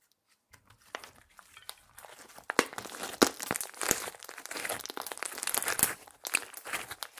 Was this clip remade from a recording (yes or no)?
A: no